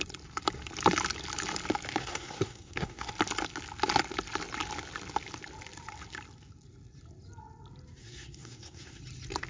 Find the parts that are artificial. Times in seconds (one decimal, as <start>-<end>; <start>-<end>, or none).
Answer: 2.0-3.1; 8.0-9.0